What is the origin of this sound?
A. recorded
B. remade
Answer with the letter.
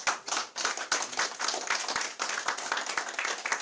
A